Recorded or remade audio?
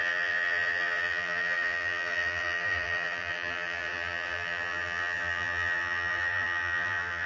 remade